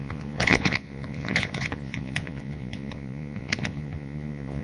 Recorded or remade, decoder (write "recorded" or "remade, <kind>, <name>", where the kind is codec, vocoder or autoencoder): remade, vocoder, Vocos